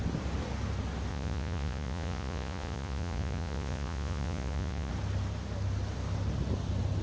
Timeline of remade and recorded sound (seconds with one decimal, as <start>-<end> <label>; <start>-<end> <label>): 0.0-1.1 recorded; 1.1-4.9 remade; 4.9-7.0 recorded